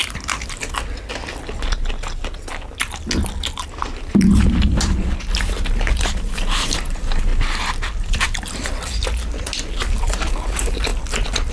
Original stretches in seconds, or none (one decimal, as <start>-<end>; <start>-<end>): 0.0-4.1; 7.3-10.0; 10.9-11.5